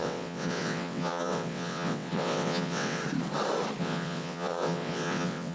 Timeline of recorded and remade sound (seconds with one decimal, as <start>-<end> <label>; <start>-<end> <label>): 0.0-3.0 remade; 3.0-3.8 recorded; 3.8-5.5 remade